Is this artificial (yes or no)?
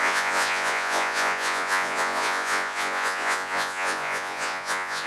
yes